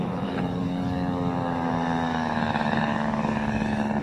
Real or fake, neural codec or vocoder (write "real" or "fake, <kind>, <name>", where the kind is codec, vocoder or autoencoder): fake, codec, DAC